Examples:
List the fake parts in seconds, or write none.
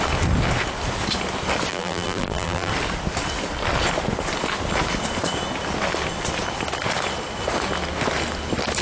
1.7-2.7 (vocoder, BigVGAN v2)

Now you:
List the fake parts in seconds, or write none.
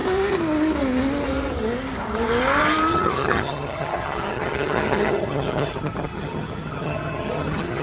2.9-7.8 (vocoder, HiFi-GAN)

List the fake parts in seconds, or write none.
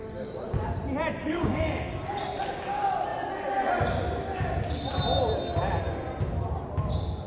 1.2-2.2 (codec, DAC)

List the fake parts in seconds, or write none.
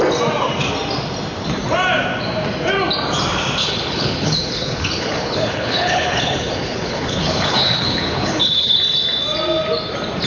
3.6-8.8 (codec, HILCodec)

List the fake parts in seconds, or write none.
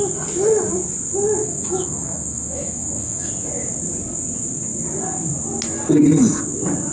1.4-3.3 (autoencoder, DAC-VAE)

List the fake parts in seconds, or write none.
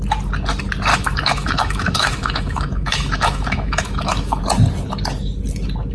0.9-4.4 (autoencoder, DAC-VAE)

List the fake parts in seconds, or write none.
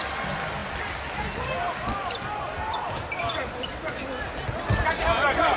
none